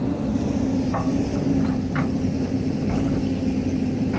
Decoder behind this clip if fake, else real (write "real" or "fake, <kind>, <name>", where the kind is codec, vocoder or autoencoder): real